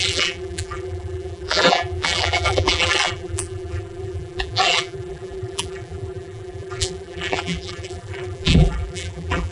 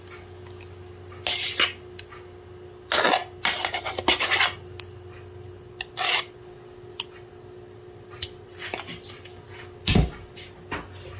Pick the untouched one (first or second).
second